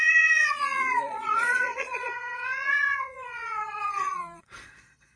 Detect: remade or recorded remade